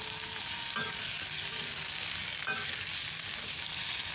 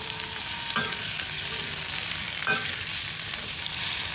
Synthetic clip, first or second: second